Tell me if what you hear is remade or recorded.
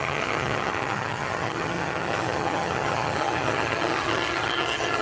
remade